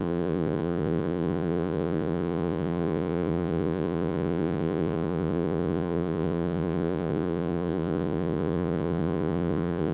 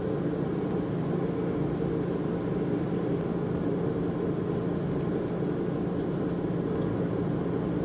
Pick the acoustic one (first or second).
second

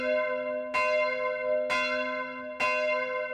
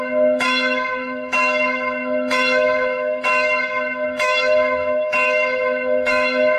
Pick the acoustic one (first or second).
first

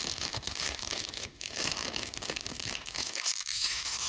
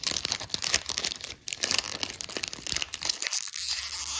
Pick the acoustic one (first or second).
second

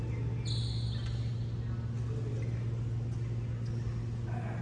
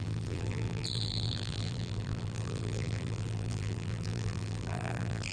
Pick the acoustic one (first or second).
first